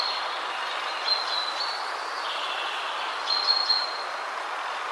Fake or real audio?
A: real